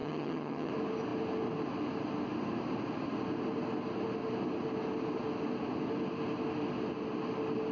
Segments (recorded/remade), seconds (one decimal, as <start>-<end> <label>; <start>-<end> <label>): 0.0-0.7 remade; 0.7-7.7 recorded

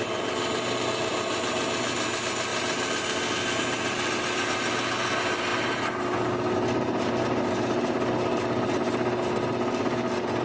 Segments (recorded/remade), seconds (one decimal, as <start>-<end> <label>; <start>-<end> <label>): 0.0-10.4 recorded

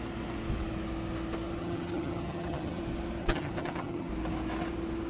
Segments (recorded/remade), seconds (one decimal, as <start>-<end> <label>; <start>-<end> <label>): 0.0-1.6 recorded; 1.6-2.8 remade; 2.8-3.2 recorded; 3.2-4.1 remade; 4.1-5.1 recorded

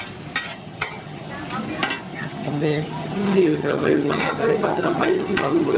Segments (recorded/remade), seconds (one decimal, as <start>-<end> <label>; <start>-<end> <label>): 0.0-0.5 recorded; 0.5-1.3 remade; 1.3-2.1 recorded; 2.1-5.8 remade

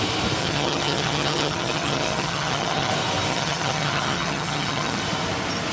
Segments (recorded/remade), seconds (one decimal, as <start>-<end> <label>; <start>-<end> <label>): 0.0-0.4 recorded; 0.4-2.9 remade; 2.9-3.3 recorded; 3.3-5.0 remade; 5.0-5.7 recorded